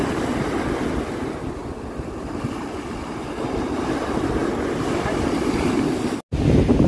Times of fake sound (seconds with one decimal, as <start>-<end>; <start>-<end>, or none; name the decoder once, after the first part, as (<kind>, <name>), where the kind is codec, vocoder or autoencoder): none